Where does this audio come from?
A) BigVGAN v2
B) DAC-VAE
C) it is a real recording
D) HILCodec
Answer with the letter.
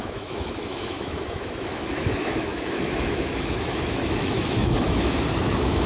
B